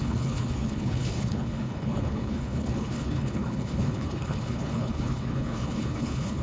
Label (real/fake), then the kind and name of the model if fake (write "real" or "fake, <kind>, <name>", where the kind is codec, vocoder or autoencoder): fake, codec, HILCodec